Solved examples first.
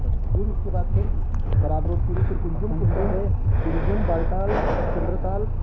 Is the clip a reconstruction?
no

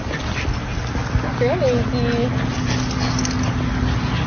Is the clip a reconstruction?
no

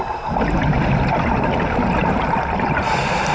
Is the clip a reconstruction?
no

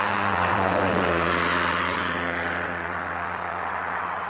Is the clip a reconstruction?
yes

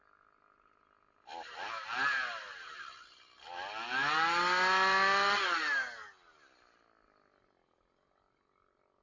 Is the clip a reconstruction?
no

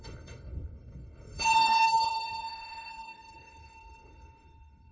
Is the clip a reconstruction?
yes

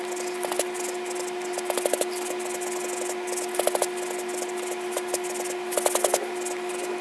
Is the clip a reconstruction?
no